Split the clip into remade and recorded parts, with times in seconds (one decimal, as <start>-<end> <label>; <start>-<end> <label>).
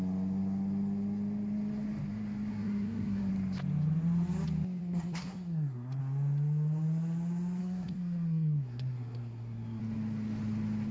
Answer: 0.0-2.5 recorded; 2.5-3.3 remade; 3.3-4.8 recorded; 4.8-6.0 remade; 6.0-7.6 recorded; 7.6-9.8 remade; 9.8-10.9 recorded